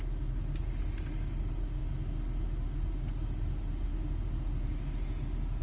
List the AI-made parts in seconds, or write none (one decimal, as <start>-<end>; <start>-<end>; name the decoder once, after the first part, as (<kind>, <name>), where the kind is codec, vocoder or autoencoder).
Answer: none